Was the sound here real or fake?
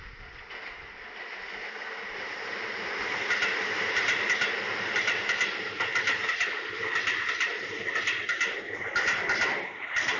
real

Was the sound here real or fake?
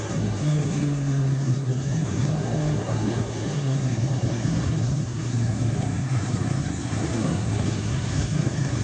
fake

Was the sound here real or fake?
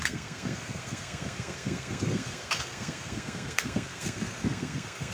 fake